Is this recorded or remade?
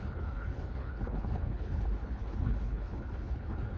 remade